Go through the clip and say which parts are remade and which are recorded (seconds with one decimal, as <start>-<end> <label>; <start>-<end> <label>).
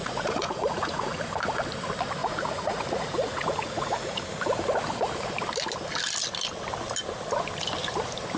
0.0-1.2 remade; 1.2-2.2 recorded; 2.2-4.2 remade; 4.2-8.4 recorded